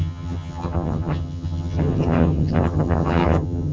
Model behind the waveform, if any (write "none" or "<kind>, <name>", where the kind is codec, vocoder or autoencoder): vocoder, HiFi-GAN